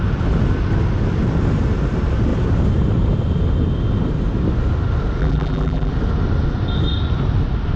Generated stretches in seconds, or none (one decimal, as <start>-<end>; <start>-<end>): 5.2-5.9